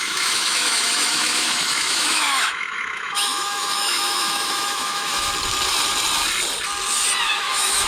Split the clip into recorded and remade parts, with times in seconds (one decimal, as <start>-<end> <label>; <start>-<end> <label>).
0.0-5.3 remade; 5.3-7.2 recorded; 7.2-7.9 remade